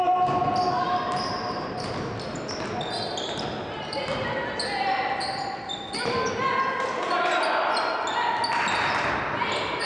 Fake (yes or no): no